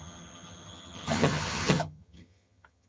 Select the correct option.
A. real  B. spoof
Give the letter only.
B